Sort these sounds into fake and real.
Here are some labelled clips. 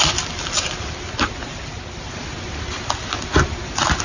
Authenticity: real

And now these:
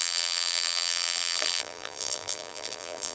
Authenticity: fake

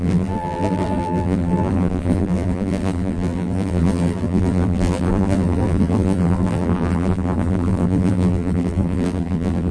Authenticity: fake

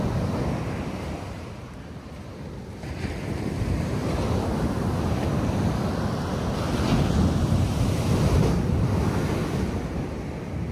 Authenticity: fake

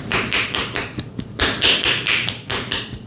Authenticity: fake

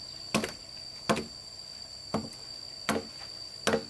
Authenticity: real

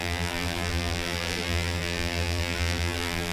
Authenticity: fake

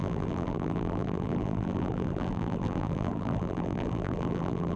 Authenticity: fake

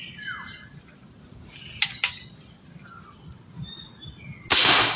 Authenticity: real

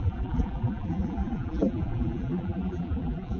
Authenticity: fake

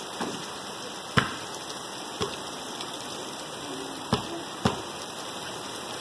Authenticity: fake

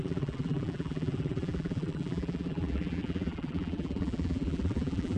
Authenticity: fake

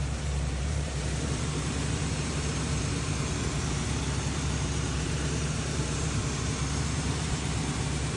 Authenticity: fake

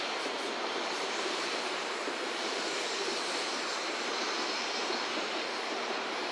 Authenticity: fake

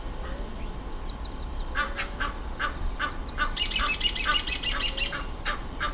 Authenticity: real